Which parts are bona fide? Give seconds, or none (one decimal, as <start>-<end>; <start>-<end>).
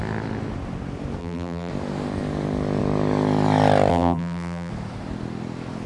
0.0-1.2; 1.7-3.9; 4.7-5.9